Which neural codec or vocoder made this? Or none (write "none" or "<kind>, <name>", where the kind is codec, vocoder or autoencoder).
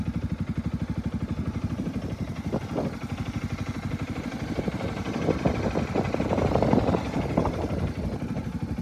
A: none